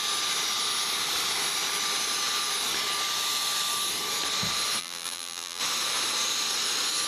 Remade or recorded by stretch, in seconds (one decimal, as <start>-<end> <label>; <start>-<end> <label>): 0.0-4.8 recorded; 4.8-5.6 remade; 5.6-7.1 recorded